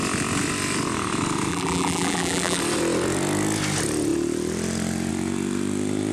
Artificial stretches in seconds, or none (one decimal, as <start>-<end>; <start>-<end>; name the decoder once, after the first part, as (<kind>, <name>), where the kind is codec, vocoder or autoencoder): 1.5-2.6 (vocoder, BigVGAN v2)